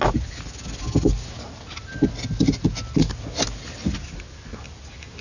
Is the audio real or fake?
real